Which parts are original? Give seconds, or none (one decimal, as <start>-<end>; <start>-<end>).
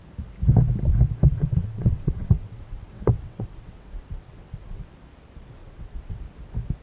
0.0-1.4; 4.9-5.6; 6.2-6.8